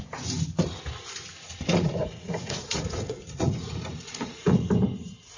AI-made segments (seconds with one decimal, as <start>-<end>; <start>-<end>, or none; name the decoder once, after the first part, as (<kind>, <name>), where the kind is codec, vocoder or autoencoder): 1.5-4.7 (vocoder, Vocos)